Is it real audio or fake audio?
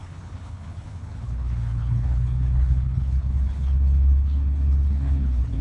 fake